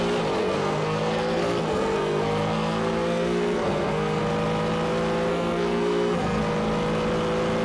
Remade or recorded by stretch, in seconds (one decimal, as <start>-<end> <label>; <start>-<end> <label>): 0.0-0.4 recorded; 0.4-4.2 remade; 4.2-5.3 recorded; 5.3-6.4 remade; 6.4-7.6 recorded